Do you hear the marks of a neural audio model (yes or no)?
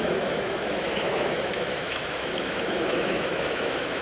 yes